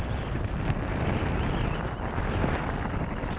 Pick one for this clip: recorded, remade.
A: recorded